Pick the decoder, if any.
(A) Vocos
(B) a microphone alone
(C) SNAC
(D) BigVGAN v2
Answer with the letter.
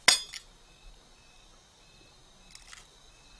B